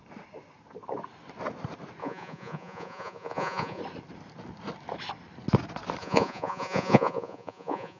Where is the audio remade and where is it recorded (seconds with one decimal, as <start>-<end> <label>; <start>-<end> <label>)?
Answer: 0.0-2.0 recorded; 2.0-3.8 remade; 3.8-6.0 recorded; 6.0-8.0 remade